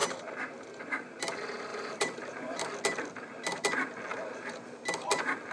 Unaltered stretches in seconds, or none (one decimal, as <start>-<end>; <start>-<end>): 1.2-1.7; 2.6-4.1; 4.8-5.5